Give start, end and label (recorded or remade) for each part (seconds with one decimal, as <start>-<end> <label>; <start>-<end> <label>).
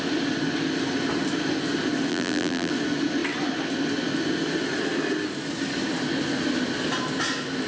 0.0-2.1 recorded; 2.1-2.7 remade; 2.7-7.7 recorded